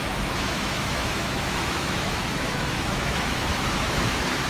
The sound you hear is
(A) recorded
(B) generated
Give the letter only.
B